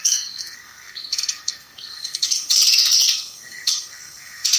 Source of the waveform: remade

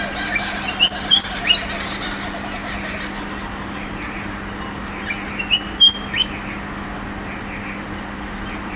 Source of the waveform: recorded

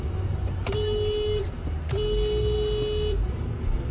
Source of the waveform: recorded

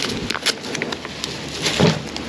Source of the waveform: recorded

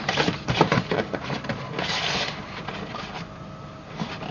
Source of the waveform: recorded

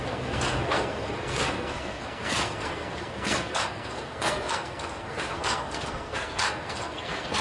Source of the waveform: remade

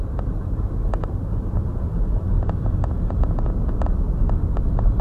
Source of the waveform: remade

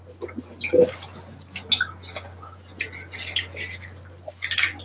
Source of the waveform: recorded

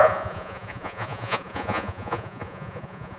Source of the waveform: remade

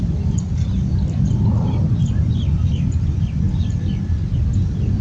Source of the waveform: recorded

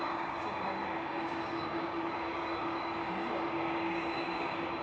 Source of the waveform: remade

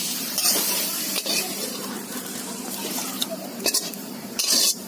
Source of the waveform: remade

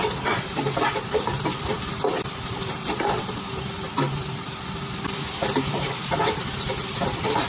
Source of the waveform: remade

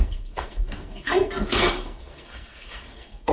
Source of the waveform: remade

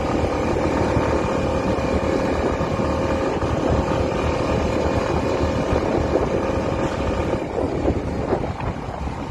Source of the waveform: recorded